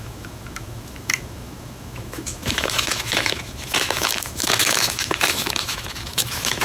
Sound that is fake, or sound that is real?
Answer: fake